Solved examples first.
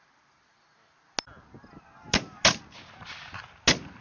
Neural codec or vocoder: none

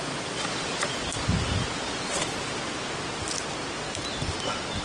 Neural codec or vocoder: none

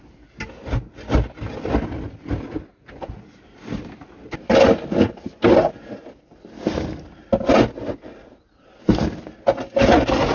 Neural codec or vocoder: none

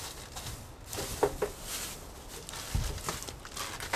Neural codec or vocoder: none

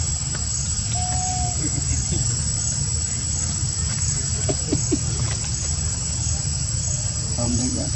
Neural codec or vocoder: none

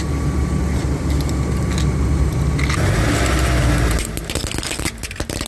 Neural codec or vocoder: none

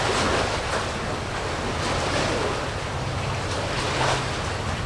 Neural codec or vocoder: none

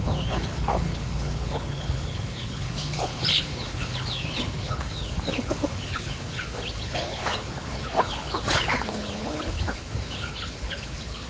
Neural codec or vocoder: codec, HILCodec